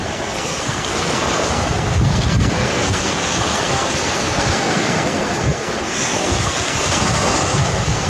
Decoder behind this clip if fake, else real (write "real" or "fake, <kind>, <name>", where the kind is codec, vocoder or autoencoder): fake, codec, SNAC